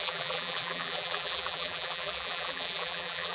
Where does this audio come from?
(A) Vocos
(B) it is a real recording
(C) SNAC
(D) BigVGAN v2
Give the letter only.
D